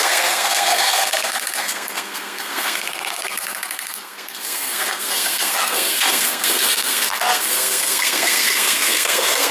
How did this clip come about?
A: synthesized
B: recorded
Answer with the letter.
A